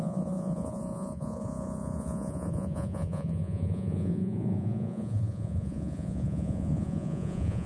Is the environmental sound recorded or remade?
remade